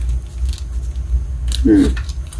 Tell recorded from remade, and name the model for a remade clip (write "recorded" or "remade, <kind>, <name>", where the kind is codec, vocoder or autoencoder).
recorded